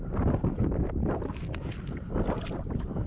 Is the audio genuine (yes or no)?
yes